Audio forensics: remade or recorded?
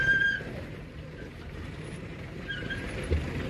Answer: remade